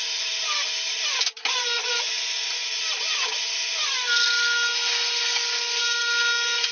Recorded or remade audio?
recorded